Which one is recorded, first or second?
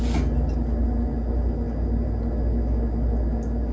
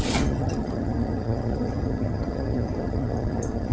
first